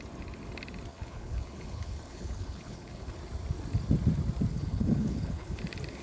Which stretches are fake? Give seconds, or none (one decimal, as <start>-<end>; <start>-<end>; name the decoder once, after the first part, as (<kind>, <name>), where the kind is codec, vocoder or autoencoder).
0.9-3.2 (codec, HILCodec); 4.5-5.6